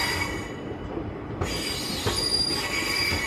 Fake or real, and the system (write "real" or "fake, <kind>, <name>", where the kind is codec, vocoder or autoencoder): real